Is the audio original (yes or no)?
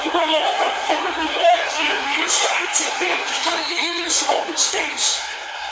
no